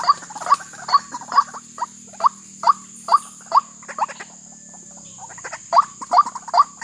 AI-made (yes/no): no